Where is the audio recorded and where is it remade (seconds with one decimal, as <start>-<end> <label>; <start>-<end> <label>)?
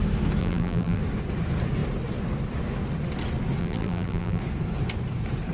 0.0-0.4 recorded; 0.4-1.0 remade; 1.0-3.6 recorded; 3.6-4.4 remade; 4.4-5.5 recorded